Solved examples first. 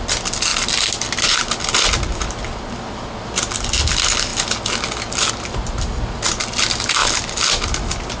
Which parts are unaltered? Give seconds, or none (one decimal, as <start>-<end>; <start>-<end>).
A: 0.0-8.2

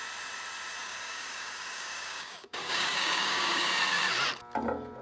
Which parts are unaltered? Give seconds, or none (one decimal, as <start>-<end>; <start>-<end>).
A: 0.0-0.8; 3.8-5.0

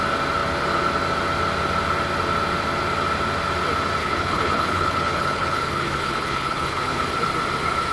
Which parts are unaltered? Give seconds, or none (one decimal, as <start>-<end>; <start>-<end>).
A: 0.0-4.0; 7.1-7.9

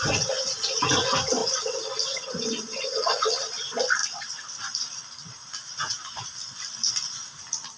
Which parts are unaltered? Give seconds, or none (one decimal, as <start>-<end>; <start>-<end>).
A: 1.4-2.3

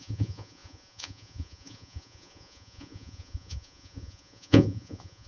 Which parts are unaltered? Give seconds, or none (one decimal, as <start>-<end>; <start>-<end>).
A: none

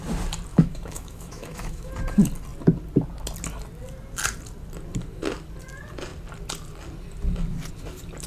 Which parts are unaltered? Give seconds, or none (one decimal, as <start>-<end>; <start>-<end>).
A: 0.0-0.5; 1.9-8.3

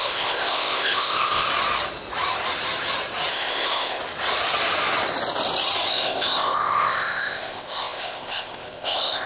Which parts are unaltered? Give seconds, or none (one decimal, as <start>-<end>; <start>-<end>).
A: 1.5-3.3; 4.0-5.9

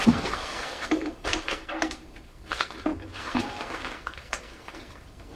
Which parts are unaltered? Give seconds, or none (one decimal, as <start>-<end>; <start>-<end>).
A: none